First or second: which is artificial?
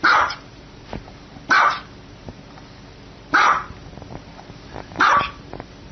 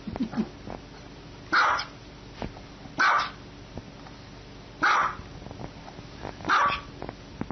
first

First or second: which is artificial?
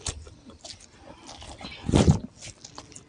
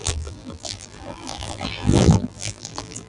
second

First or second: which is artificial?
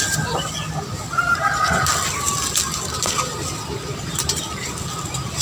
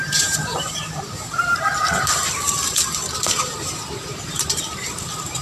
second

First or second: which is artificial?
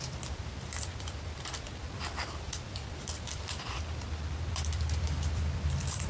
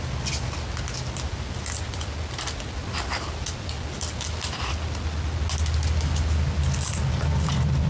first